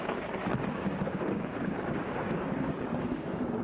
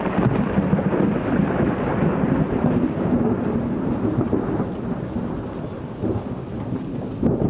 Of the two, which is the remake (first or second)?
first